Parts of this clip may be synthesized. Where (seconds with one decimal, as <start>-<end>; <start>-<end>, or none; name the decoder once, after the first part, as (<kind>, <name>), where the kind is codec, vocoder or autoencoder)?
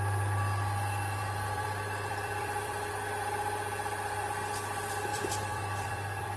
1.2-2.9 (vocoder, BigVGAN v2); 5.1-6.4